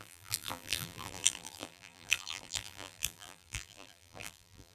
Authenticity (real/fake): fake